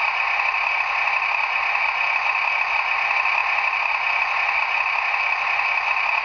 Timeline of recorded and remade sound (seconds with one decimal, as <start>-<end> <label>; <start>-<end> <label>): 0.0-6.2 recorded

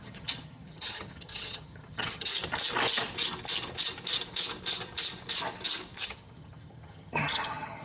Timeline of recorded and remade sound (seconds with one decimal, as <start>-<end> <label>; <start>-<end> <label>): 0.0-2.3 remade; 2.3-6.0 recorded; 6.0-7.8 remade

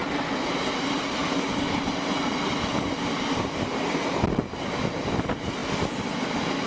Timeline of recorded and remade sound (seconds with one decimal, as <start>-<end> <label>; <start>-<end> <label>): 0.0-6.7 recorded

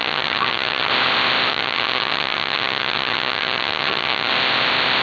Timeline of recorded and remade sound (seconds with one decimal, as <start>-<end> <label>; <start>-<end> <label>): 0.0-0.9 remade; 0.9-1.5 recorded; 1.5-4.3 remade; 4.3-5.0 recorded

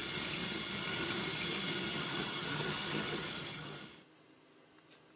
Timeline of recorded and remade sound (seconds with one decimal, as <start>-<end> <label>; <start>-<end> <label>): 0.0-1.9 recorded; 1.9-3.8 remade; 3.8-5.2 recorded

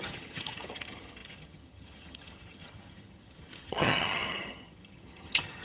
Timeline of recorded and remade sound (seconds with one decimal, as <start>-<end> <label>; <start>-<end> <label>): 0.0-5.6 remade